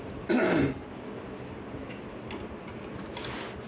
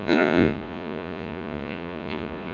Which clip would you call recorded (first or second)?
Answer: first